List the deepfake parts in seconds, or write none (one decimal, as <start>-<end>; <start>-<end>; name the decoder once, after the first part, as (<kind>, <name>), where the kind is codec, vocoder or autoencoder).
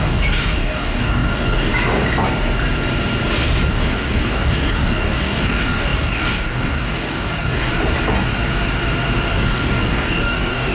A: 0.0-1.7 (codec, DAC); 3.7-7.7; 9.3-10.7